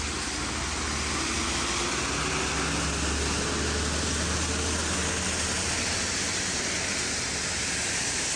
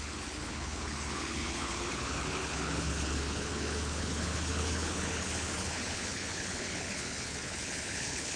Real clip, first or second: first